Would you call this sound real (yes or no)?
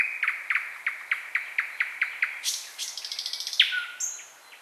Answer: yes